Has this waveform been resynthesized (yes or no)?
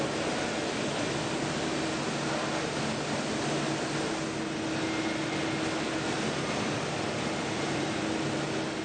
no